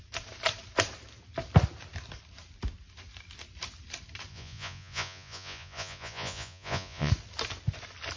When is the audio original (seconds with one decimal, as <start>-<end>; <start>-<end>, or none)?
0.0-4.3; 7.1-8.2